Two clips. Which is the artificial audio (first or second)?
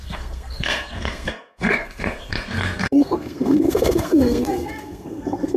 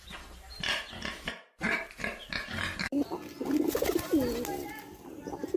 first